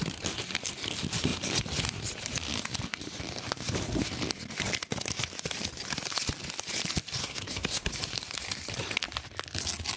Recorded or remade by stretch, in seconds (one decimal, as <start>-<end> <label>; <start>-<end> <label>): 0.0-7.2 recorded; 7.2-7.9 remade; 7.9-10.0 recorded